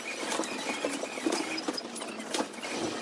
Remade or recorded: recorded